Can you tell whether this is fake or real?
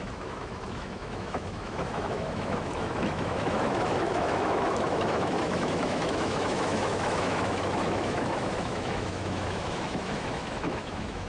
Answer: fake